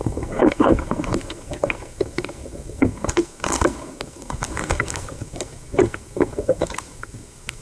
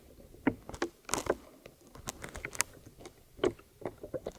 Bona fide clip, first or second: second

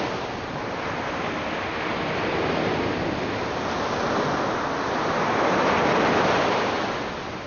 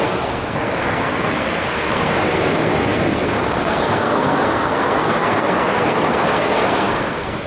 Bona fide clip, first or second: first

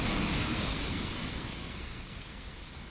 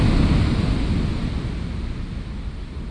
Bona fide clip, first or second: second